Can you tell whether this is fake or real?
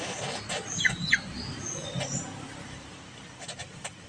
real